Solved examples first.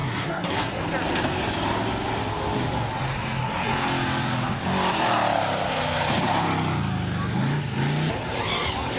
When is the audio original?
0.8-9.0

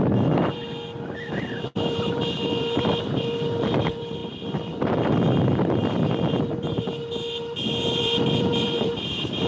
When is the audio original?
0.6-1.6; 4.2-6.4; 6.9-7.9

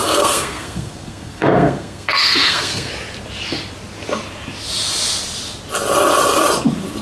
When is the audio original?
2.9-7.0

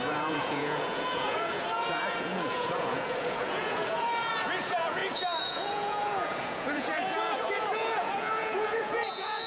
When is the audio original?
none

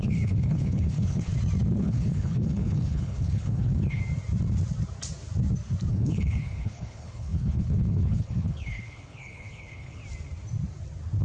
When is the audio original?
1.3-1.8; 4.0-5.9; 10.0-11.2

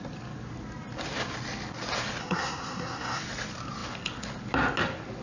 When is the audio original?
0.0-2.2; 3.2-5.2